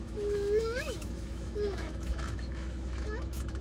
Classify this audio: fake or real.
fake